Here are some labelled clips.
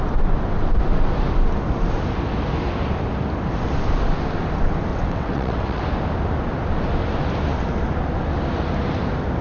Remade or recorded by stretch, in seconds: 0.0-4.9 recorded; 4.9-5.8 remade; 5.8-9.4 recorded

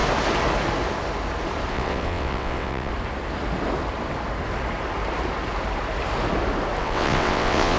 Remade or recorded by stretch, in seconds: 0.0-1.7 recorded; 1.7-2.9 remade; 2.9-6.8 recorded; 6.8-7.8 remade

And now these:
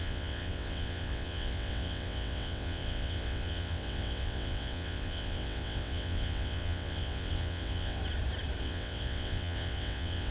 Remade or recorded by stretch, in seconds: 0.0-8.0 remade; 8.0-8.6 recorded; 8.6-10.3 remade

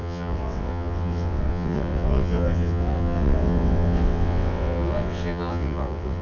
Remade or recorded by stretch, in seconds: 0.0-6.2 remade